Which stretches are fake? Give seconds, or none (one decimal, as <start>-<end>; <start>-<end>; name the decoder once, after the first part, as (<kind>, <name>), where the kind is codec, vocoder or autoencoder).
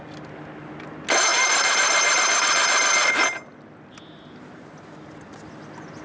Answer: none